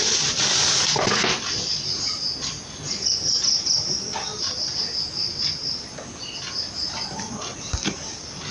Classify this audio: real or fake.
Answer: real